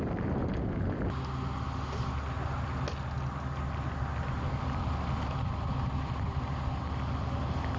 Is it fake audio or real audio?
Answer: real